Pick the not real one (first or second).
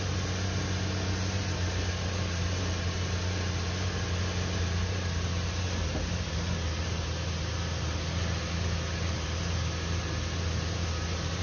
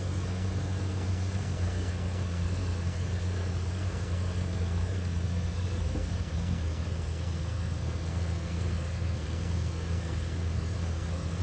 second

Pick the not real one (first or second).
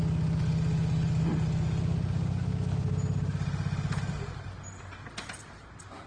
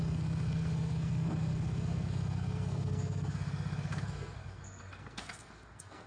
second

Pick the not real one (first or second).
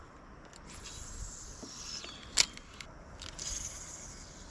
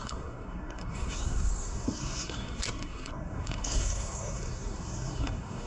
second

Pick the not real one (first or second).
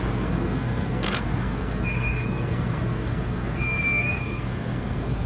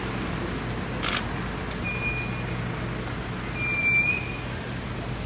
first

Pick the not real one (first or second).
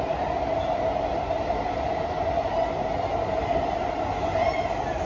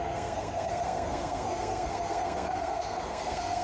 second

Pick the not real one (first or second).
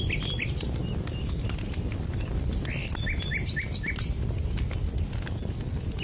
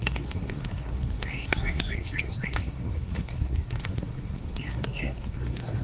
second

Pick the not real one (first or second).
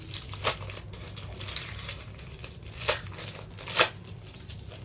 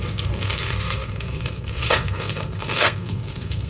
second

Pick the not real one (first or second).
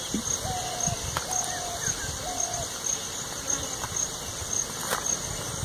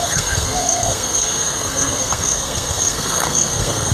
second